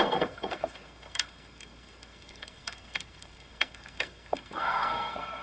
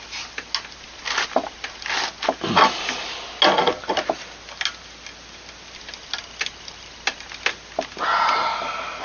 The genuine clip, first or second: second